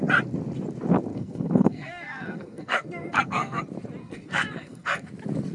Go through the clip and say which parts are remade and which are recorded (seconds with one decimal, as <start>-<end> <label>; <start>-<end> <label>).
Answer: 0.0-1.1 recorded; 1.1-3.6 remade; 3.6-4.0 recorded; 4.0-5.1 remade; 5.1-5.5 recorded